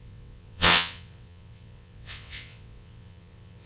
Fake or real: fake